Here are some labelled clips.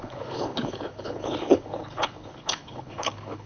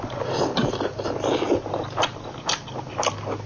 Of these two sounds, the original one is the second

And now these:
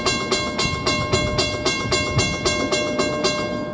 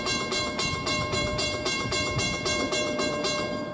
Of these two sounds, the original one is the first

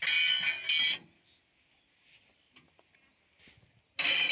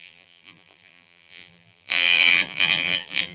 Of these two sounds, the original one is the first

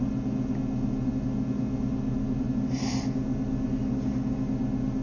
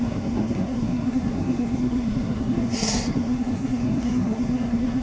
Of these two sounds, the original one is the first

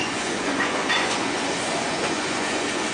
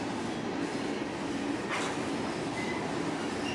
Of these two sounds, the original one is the second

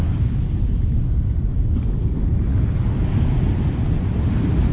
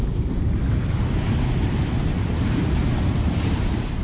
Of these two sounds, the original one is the first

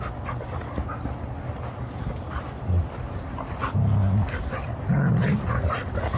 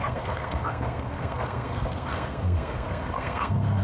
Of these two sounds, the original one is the first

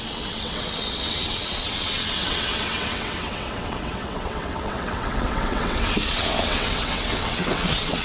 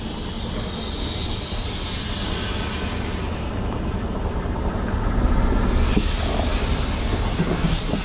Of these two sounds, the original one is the second